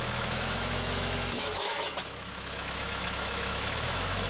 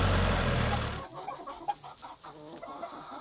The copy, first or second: first